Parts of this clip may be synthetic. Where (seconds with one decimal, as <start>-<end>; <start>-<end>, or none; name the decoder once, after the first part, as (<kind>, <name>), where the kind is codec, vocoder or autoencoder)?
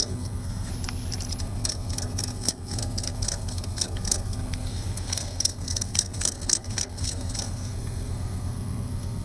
0.0-0.7 (codec, SNAC); 1.4-9.2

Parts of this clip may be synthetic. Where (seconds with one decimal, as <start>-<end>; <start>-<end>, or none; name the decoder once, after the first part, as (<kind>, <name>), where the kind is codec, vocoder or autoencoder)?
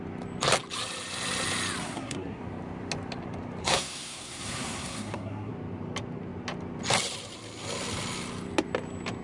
1.8-2.4 (codec, SNAC); 3.6-5.5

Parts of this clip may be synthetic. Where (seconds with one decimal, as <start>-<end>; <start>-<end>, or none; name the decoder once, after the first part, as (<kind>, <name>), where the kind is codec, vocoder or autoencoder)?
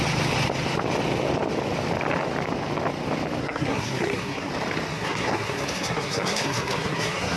3.4-4.5 (codec, SNAC); 4.9-7.4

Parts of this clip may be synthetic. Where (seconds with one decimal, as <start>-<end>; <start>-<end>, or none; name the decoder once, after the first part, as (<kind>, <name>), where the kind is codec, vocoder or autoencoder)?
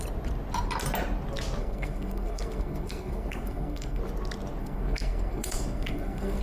1.6-4.0 (codec, SNAC); 4.6-6.4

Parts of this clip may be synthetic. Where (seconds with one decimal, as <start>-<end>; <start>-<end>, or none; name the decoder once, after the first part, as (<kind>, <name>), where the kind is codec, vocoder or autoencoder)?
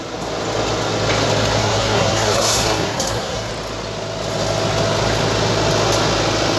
1.6-3.5 (codec, SNAC)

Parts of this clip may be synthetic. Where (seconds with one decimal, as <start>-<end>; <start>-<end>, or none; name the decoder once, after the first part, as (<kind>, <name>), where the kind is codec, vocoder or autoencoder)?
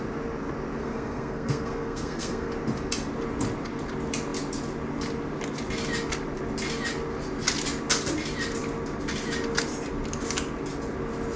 0.8-2.5 (codec, SNAC)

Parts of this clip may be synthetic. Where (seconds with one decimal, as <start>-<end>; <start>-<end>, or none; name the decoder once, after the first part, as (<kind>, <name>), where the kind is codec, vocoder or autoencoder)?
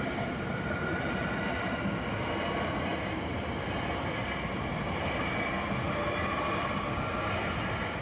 none